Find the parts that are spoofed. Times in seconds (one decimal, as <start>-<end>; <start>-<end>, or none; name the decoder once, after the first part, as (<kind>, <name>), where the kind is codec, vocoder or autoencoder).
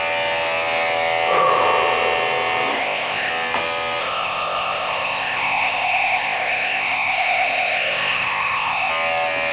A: 2.7-3.3 (codec, ZipCodec); 4.0-8.9